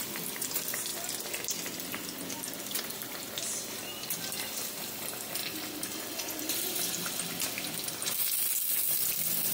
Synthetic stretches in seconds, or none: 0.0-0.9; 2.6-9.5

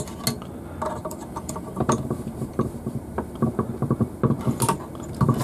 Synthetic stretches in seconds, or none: 1.0-4.2

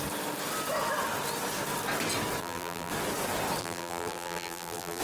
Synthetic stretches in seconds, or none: 2.4-2.9; 3.6-5.0

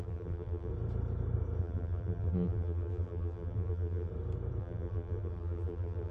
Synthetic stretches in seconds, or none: 0.0-0.7; 1.6-4.1; 4.6-6.1

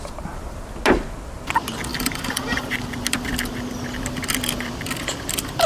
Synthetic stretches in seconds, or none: 1.9-2.6